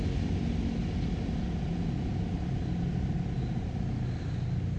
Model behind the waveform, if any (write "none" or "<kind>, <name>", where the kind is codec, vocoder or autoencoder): none